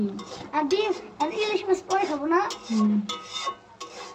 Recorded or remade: recorded